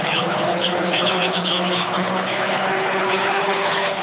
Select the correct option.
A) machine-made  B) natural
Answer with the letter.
A